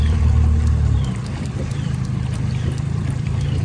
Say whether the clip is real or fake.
fake